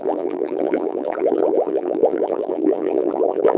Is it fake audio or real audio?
fake